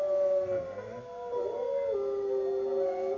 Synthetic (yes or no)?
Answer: no